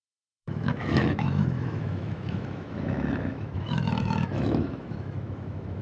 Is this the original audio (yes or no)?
no